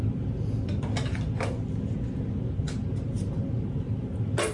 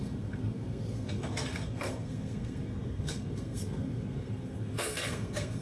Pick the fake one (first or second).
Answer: second